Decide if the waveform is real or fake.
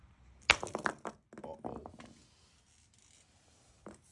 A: real